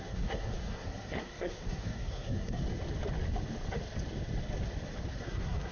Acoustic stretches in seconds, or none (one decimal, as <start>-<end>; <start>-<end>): 2.6-5.1